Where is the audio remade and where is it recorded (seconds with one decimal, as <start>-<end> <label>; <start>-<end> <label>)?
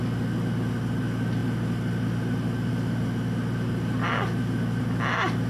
0.0-5.5 recorded